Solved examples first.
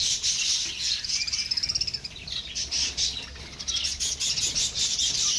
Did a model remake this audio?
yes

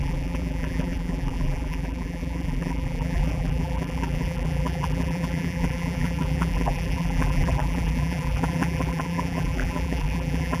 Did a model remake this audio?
yes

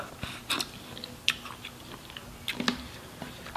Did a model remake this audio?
yes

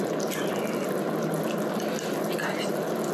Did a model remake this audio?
no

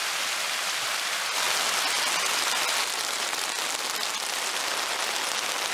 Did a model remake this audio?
no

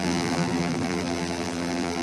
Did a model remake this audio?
yes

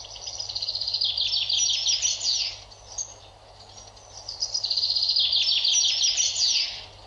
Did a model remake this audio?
no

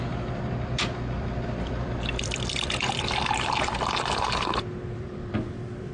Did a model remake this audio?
yes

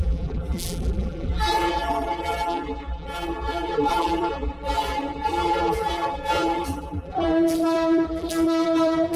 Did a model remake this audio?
yes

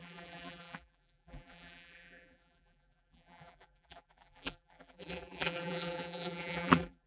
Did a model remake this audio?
yes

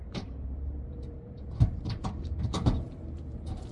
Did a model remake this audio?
yes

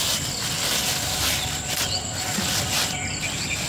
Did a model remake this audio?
no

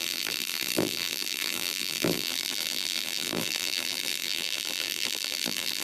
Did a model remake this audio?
yes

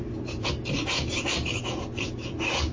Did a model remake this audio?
no